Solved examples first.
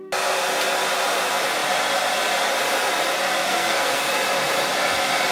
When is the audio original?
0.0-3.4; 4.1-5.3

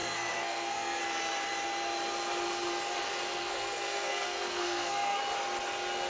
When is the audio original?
1.0-3.4; 5.2-6.1

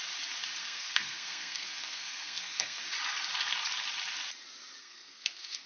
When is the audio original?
0.0-0.6; 2.8-4.8

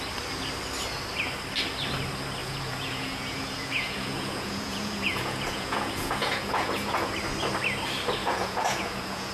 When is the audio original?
0.0-2.4; 7.1-8.2